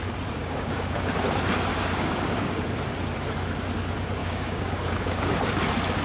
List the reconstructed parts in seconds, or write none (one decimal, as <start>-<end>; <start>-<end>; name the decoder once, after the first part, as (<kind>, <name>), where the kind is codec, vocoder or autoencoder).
0.4-1.1 (codec, DAC); 1.7-2.6; 4.2-5.3